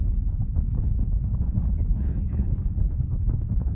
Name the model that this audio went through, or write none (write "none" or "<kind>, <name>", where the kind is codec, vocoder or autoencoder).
codec, HILCodec